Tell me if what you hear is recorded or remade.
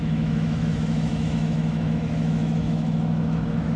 remade